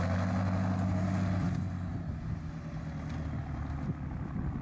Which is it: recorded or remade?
recorded